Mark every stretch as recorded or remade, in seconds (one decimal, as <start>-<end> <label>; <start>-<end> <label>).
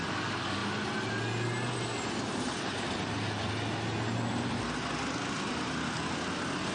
0.0-6.7 recorded